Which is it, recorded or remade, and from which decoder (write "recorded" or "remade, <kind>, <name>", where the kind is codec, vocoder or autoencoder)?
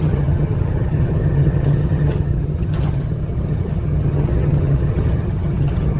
remade, vocoder, HiFi-GAN